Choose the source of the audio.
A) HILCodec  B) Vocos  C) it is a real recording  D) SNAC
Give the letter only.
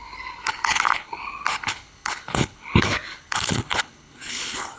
A